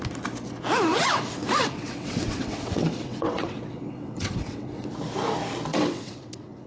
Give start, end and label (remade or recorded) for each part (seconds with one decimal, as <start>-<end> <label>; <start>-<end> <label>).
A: 0.0-0.9 recorded; 0.9-4.9 remade; 4.9-5.7 recorded; 5.7-6.7 remade